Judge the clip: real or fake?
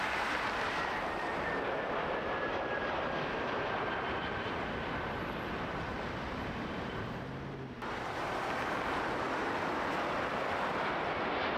fake